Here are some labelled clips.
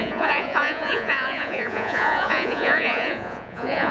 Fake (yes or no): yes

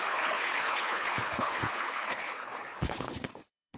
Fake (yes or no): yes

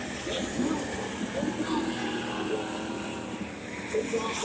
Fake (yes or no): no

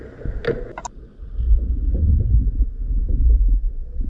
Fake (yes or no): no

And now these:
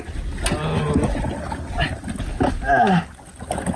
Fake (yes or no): no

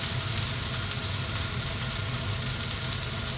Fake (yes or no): no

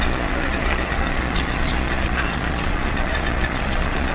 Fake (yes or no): yes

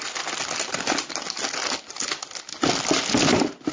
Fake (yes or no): no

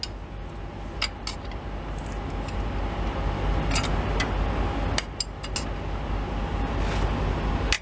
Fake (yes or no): no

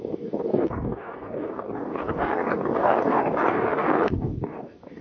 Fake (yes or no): yes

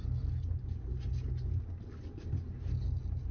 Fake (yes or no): no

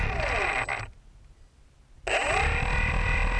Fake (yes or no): no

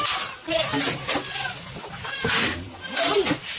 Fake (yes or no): no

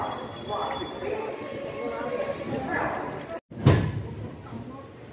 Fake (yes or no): no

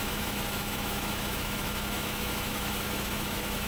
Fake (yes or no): yes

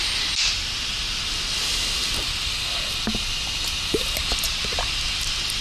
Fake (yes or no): no